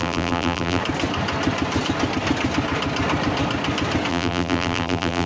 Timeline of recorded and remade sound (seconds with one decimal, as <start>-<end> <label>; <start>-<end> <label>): 0.0-0.8 remade; 0.8-4.1 recorded; 4.1-5.3 remade